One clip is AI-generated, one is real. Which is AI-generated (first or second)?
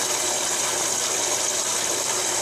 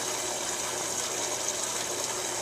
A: first